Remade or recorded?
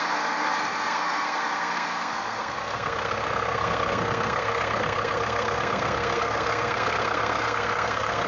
remade